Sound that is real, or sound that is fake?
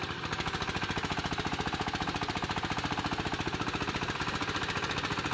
real